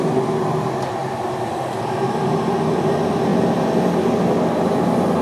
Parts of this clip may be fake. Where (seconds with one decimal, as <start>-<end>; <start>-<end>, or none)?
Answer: none